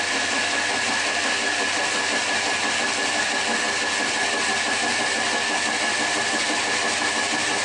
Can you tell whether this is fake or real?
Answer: real